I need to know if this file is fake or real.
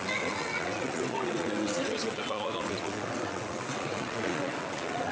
fake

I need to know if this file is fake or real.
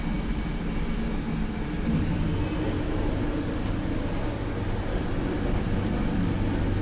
real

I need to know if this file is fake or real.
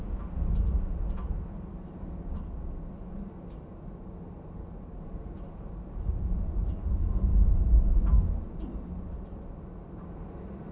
real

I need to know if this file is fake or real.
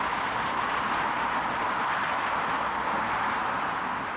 real